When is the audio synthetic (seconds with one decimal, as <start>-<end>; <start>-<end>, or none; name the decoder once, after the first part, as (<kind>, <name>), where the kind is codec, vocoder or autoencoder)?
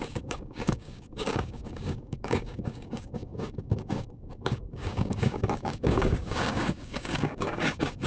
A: 0.0-8.1 (codec, DAC)